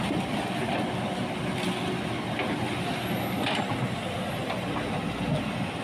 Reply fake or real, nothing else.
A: real